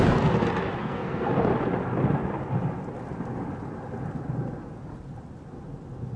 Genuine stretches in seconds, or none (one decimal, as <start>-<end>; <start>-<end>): 0.0-0.8; 1.3-6.2

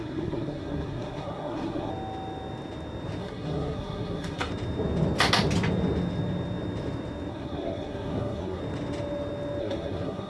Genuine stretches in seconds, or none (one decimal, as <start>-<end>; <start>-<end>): 1.9-3.2; 4.5-7.3; 8.6-9.6